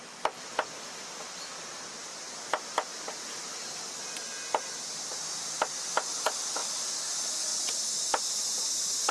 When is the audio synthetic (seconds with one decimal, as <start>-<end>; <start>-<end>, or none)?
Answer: none